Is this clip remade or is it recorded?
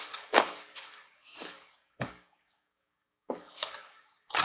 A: remade